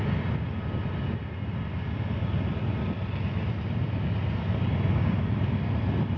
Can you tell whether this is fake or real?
real